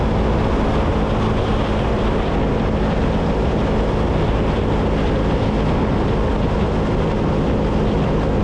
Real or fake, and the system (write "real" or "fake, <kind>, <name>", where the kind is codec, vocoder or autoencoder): real